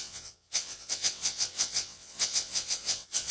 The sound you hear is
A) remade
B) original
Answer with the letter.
A